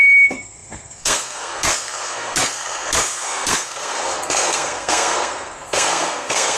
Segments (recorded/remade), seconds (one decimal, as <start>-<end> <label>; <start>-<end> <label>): 0.0-6.6 remade